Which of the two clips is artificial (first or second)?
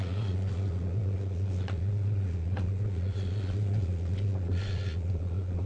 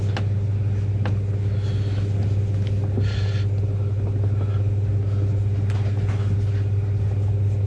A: first